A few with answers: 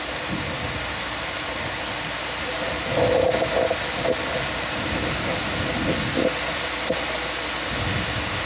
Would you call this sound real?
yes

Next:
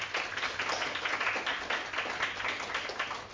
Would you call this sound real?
yes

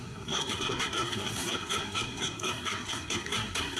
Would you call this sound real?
no